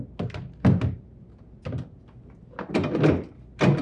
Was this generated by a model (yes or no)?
no